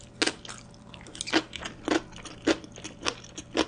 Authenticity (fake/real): real